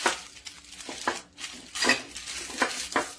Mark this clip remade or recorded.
recorded